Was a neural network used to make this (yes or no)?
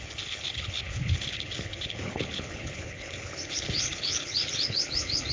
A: yes